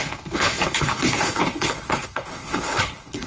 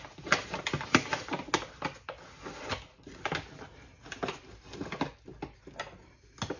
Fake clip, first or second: first